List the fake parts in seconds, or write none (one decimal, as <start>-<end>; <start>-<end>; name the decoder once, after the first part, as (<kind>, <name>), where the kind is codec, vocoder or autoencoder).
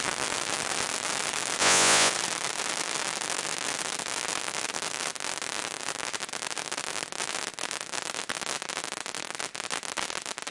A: 1.6-2.1 (vocoder, Vocos)